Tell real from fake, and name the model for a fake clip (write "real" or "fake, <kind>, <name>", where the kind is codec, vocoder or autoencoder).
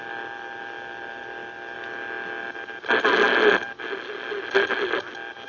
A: real